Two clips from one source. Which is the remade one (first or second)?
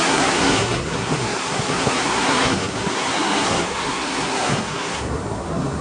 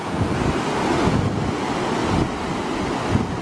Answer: first